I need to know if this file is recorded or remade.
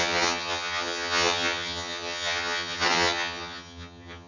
remade